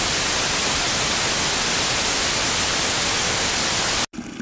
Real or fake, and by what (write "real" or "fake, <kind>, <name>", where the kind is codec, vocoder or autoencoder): real